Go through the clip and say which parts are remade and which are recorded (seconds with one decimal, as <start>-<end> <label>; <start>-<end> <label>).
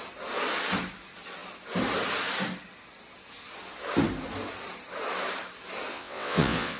0.0-5.9 recorded; 5.9-6.8 remade